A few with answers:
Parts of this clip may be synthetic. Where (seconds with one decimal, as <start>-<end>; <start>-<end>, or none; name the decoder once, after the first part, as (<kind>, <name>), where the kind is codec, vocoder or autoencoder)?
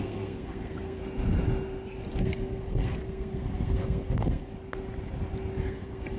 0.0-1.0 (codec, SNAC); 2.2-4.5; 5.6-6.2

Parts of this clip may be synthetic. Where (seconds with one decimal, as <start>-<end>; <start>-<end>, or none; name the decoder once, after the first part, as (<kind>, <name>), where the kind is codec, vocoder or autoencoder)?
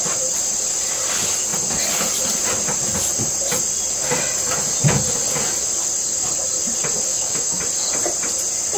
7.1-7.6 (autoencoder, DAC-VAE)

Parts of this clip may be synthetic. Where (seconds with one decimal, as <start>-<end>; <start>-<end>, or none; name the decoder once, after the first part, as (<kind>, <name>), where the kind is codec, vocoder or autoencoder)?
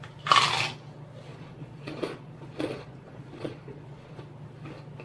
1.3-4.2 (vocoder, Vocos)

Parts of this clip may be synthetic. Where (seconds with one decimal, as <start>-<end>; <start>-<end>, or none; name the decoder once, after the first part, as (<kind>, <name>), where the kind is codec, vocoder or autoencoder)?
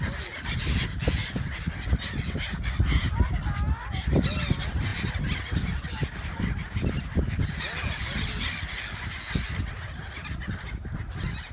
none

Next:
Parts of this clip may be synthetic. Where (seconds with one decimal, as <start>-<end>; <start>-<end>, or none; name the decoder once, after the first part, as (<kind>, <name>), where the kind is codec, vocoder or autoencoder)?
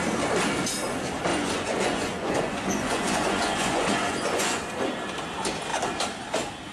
1.3-4.6 (vocoder, Vocos)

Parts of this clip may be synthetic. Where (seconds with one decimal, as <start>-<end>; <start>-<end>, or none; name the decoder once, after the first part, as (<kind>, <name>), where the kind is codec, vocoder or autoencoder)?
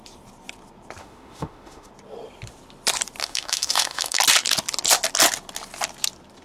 1.0-1.9 (autoencoder, DAC-VAE); 3.2-4.2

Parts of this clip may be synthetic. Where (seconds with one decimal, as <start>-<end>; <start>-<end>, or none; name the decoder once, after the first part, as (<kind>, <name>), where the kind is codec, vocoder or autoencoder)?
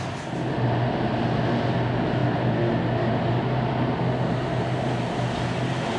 none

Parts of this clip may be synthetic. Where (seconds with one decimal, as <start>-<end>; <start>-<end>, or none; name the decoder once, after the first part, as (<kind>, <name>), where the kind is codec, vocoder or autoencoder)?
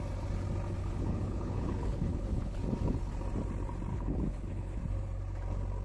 0.8-2.6 (codec, HILCodec); 3.9-4.8